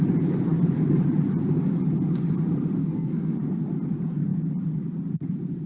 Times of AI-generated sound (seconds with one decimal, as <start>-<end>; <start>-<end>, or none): 2.8-3.4